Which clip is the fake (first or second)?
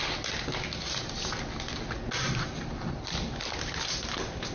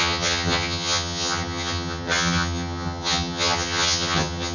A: second